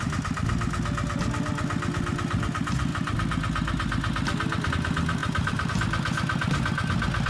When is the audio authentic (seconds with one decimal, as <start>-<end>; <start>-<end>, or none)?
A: 0.0-5.2; 5.7-7.3

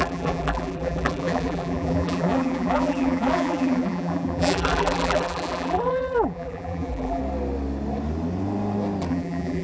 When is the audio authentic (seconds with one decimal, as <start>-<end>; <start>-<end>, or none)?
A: 7.2-9.1

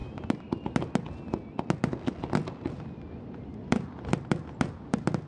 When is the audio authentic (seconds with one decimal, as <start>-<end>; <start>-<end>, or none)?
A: 0.0-3.2

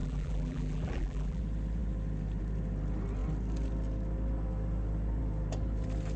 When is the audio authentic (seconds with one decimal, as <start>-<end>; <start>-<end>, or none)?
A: 1.4-6.2

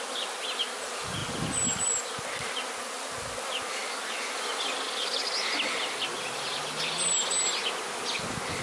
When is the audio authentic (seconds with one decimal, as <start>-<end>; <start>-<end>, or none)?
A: 0.0-8.6